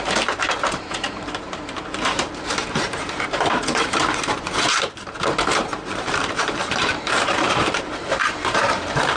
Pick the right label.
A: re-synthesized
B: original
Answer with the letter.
A